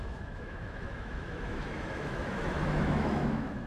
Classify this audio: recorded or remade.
remade